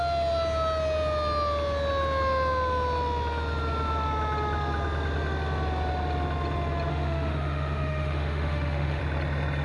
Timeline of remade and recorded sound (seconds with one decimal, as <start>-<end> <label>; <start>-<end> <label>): 0.0-6.9 recorded; 6.9-9.0 remade; 9.0-9.6 recorded